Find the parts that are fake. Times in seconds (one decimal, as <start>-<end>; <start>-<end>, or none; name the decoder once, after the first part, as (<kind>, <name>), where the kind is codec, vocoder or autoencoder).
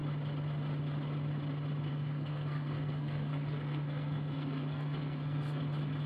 1.9-5.6 (codec, SNAC)